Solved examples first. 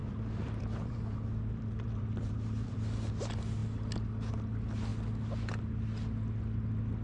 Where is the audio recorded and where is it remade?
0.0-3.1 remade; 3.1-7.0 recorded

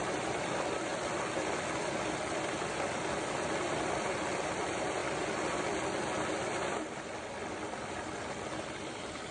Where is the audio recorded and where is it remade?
0.0-0.9 remade; 0.9-1.5 recorded; 1.5-5.0 remade; 5.0-7.9 recorded; 7.9-9.3 remade

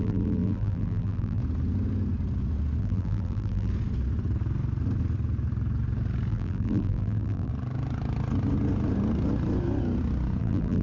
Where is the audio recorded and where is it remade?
0.0-1.4 remade; 1.4-2.8 recorded; 2.8-3.7 remade; 3.7-6.3 recorded; 6.3-7.5 remade; 7.5-10.4 recorded; 10.4-10.8 remade

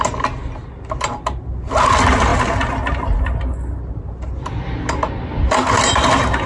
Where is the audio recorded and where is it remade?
0.0-6.5 recorded

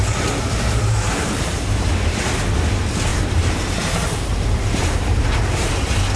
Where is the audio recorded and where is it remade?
0.0-1.5 remade; 1.5-3.1 recorded; 3.1-5.7 remade; 5.7-6.2 recorded

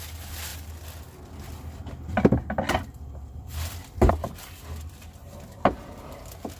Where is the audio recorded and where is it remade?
0.0-5.2 recorded; 5.2-6.0 remade; 6.0-6.6 recorded

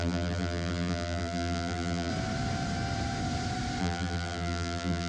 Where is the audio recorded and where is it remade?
0.0-2.1 remade; 2.1-3.8 recorded; 3.8-5.1 remade

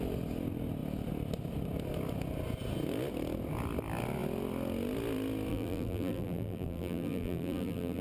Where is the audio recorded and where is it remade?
0.0-5.5 recorded; 5.5-8.0 remade